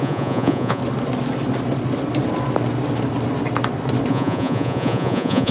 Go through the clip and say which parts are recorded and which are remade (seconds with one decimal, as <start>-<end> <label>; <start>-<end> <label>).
0.0-0.8 remade; 0.8-4.1 recorded; 4.1-5.5 remade

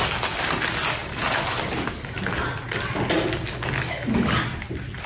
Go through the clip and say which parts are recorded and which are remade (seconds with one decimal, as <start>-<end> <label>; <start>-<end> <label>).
0.0-5.1 recorded

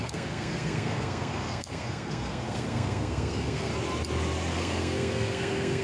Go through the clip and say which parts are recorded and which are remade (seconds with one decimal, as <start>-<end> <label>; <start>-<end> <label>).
0.0-3.7 remade; 3.7-4.5 recorded; 4.5-5.8 remade

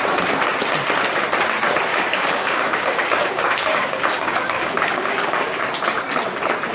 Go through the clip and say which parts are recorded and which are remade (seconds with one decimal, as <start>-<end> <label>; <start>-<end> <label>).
0.0-1.9 recorded; 1.9-5.7 remade; 5.7-6.7 recorded

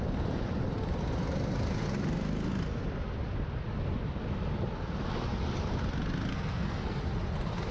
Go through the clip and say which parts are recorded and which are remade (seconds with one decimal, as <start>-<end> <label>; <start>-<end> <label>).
0.0-6.3 recorded; 6.3-7.0 remade; 7.0-7.7 recorded

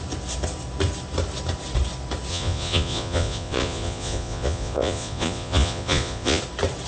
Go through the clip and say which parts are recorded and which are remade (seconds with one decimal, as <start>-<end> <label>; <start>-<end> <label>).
0.0-2.3 recorded; 2.3-6.4 remade; 6.4-6.9 recorded

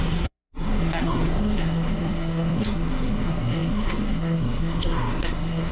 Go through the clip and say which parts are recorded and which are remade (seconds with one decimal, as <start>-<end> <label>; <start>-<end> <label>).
0.0-5.7 remade

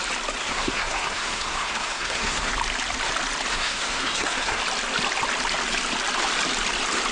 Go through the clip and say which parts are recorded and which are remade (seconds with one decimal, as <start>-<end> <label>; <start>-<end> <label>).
0.0-0.4 recorded; 0.4-2.5 remade; 2.5-3.5 recorded; 3.5-4.6 remade; 4.6-7.1 recorded